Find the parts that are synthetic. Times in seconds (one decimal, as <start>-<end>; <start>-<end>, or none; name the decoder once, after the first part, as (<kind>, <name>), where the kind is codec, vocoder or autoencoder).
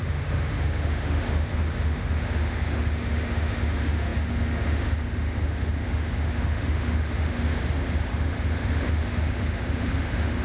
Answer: 0.0-10.4 (autoencoder, DAC-VAE)